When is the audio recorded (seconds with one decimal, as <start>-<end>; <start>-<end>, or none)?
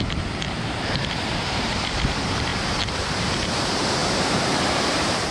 none